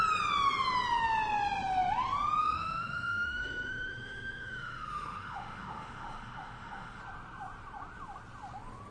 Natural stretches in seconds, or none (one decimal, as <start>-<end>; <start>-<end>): 0.0-2.4; 7.0-8.9